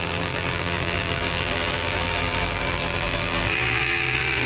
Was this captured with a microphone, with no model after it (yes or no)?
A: no